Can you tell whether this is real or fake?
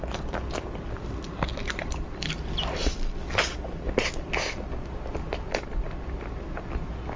real